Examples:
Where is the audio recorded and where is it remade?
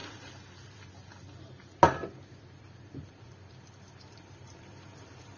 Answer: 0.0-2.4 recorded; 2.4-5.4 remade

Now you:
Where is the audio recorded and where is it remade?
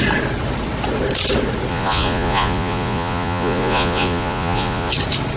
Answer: 0.0-1.7 recorded; 1.7-4.9 remade; 4.9-5.4 recorded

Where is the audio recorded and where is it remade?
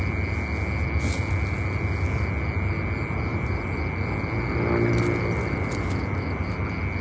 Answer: 0.0-3.3 recorded; 3.3-3.8 remade; 3.8-7.0 recorded